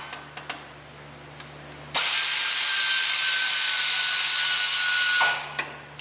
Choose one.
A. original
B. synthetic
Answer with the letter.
A